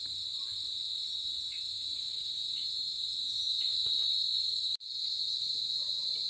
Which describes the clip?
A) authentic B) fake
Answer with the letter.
B